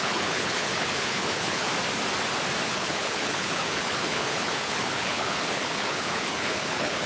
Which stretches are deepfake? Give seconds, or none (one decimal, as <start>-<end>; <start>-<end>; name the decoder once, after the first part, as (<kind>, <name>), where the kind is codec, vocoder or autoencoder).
0.0-1.7 (codec, HILCodec); 2.7-7.1